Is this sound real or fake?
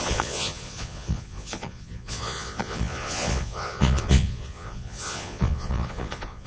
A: fake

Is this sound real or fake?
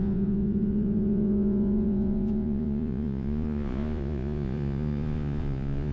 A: fake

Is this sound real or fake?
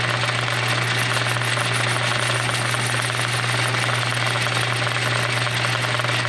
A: real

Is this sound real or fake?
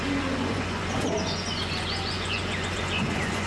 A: fake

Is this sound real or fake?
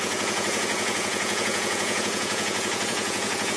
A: fake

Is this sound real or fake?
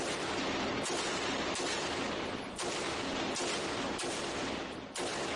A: real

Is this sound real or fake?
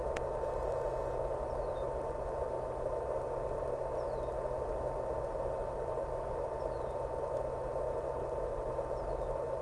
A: real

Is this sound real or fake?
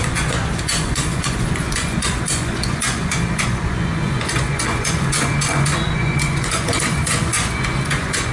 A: fake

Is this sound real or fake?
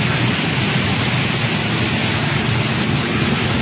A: real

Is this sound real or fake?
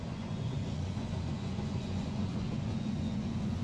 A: fake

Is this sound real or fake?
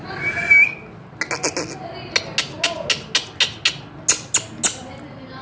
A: real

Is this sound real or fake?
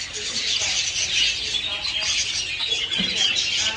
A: real